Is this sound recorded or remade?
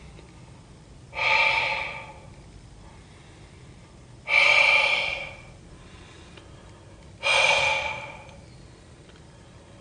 recorded